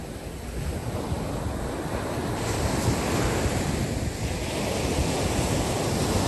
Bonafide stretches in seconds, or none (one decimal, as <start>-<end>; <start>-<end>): 0.0-6.3